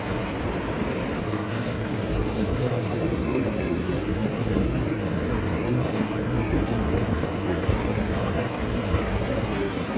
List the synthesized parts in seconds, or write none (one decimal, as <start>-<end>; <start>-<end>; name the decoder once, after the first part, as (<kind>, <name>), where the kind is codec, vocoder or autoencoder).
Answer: 0.0-0.4 (codec, SNAC); 1.2-10.0